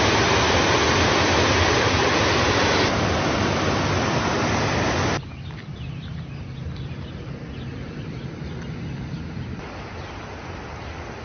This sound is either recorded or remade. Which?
recorded